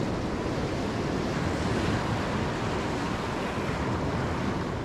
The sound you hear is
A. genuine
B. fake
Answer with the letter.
A